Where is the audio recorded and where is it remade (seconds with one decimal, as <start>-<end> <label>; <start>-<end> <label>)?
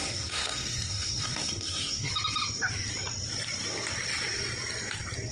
0.0-2.1 remade; 2.1-5.3 recorded